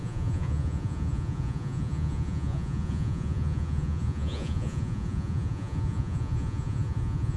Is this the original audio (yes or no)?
no